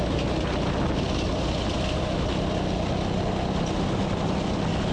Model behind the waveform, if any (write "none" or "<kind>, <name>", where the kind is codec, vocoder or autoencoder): none